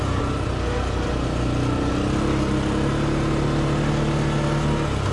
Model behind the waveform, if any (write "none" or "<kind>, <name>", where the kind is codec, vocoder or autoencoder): none